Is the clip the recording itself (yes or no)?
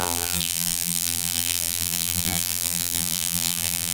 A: no